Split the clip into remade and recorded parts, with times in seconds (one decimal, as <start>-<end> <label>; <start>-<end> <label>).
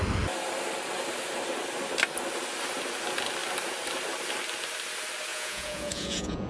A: 0.0-5.3 recorded; 5.3-6.5 remade